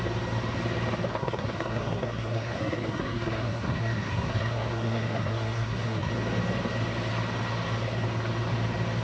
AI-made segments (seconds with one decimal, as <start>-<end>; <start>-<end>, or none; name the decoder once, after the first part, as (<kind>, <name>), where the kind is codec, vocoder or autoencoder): 1.2-6.1 (codec, SNAC)